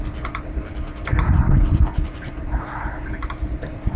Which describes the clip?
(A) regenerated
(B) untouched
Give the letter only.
A